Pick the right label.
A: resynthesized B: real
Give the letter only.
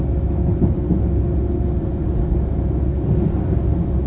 B